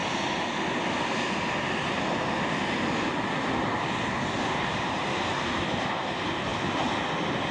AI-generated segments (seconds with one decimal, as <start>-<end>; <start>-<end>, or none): 4.4-6.5